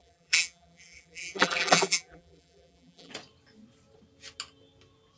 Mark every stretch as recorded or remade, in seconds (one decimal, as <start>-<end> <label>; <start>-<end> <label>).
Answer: 0.0-3.1 remade; 3.1-5.2 recorded